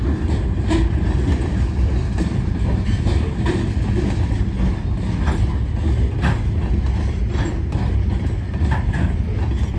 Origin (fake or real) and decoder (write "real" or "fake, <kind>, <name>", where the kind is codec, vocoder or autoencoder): real